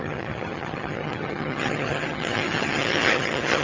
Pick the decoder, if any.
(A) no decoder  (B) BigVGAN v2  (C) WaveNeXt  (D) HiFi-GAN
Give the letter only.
D